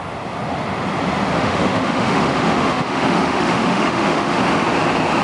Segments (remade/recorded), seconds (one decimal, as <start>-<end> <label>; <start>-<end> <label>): 0.0-1.3 recorded; 1.3-4.4 remade; 4.4-5.2 recorded